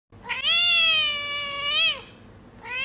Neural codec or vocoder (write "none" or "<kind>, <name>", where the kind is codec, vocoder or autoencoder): none